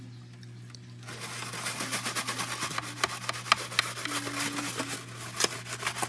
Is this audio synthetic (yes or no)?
no